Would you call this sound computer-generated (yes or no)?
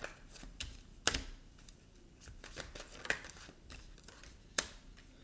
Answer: yes